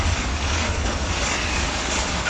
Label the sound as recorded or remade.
remade